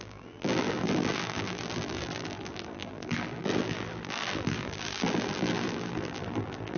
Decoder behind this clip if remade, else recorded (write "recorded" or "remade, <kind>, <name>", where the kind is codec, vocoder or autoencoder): remade, vocoder, BigVGAN v2